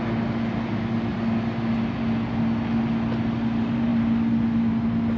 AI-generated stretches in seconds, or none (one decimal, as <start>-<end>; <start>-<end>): none